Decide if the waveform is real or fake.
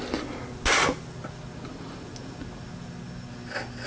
real